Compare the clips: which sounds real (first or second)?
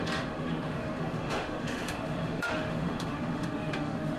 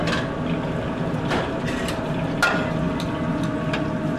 second